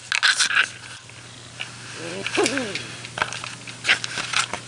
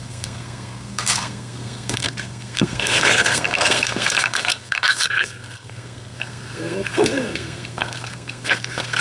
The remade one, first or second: second